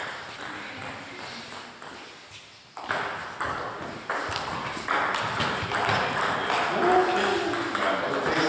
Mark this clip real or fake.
real